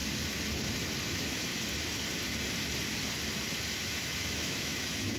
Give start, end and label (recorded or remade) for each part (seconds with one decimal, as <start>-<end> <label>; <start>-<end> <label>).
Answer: 0.0-1.1 recorded; 1.1-1.5 remade; 1.5-4.0 recorded; 4.0-5.2 remade